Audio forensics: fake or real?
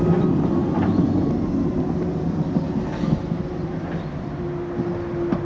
real